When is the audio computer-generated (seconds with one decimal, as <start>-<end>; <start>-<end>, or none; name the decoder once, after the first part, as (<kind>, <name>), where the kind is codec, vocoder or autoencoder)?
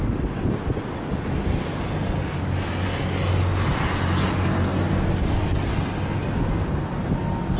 none